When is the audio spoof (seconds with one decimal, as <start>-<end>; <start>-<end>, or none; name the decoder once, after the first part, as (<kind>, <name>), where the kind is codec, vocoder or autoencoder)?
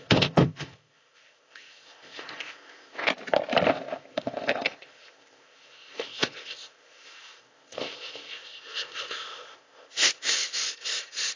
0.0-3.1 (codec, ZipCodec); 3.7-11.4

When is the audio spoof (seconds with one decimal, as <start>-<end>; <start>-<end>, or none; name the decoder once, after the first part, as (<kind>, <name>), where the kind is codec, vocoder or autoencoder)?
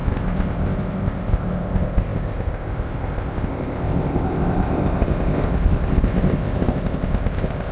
0.0-7.7 (codec, ZipCodec)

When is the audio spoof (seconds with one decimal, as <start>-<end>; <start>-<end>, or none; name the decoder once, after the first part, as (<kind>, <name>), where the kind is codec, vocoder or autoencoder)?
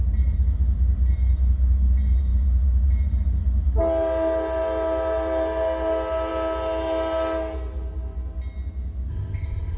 9.1-9.8 (codec, ZipCodec)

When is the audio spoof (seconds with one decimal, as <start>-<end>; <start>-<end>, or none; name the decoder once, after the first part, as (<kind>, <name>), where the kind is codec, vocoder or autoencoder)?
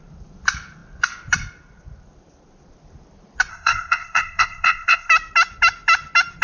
3.5-5.1 (codec, ZipCodec)